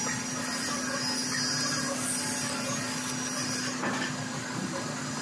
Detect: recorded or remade recorded